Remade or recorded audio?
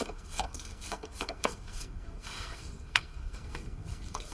remade